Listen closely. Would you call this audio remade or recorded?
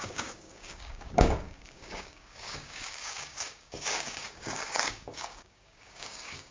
remade